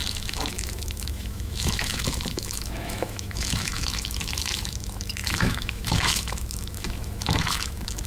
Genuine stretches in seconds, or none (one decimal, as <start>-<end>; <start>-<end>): none